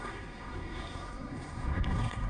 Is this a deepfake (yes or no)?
yes